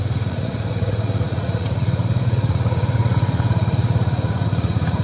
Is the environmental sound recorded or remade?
remade